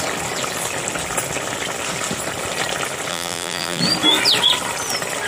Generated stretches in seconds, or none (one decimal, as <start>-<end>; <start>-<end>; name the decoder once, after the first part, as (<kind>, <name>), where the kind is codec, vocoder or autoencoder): 3.1-3.8 (vocoder, BigVGAN v2)